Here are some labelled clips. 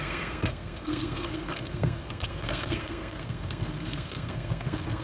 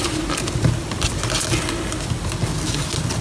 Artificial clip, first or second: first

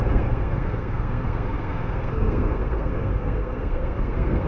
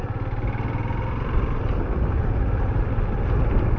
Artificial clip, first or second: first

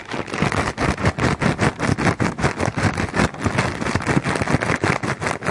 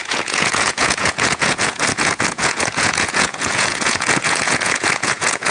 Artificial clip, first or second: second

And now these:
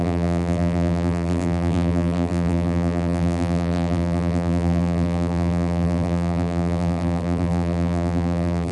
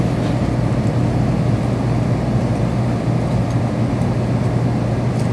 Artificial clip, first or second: first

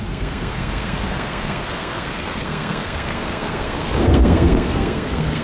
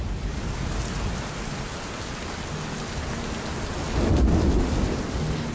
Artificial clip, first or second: first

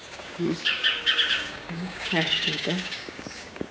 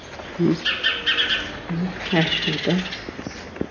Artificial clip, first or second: first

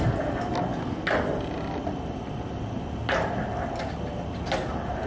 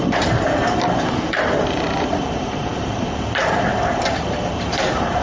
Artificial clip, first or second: second